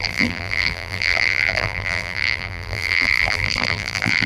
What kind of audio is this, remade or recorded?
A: remade